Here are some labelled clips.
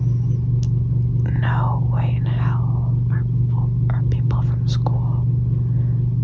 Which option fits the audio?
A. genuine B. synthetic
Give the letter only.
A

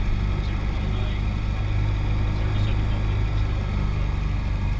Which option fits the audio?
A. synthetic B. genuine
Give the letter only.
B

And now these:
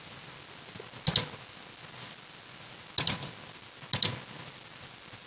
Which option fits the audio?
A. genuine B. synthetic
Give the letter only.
A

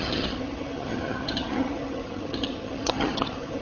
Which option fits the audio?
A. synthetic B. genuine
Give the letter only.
A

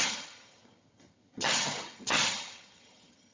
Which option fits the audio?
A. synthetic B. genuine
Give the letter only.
A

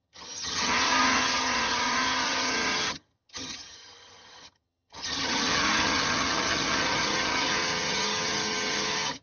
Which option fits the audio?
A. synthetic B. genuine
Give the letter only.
A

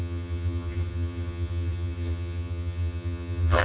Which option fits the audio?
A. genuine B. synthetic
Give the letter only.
B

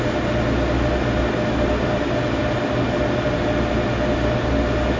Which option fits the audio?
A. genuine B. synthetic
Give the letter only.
A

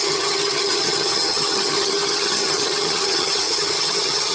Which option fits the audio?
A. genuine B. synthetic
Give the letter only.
B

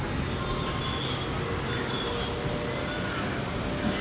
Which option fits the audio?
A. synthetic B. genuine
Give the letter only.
B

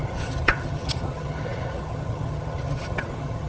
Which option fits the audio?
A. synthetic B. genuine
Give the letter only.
A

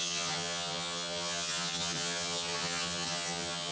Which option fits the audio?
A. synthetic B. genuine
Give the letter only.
A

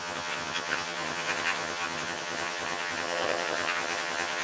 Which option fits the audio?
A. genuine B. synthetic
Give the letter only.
B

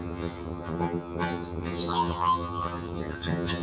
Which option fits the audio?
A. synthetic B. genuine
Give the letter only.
A